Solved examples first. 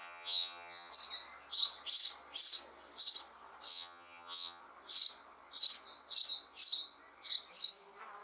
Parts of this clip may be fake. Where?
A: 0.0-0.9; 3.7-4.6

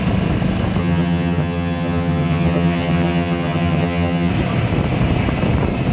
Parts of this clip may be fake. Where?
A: 0.8-4.3

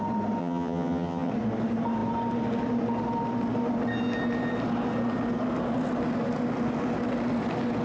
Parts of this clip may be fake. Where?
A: 0.4-1.3

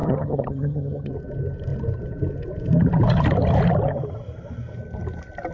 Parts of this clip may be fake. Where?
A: 0.0-1.1